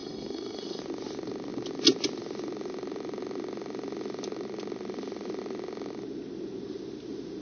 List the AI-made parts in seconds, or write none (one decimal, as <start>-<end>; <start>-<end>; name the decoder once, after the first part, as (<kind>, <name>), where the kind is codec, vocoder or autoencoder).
0.0-0.8 (codec, SNAC)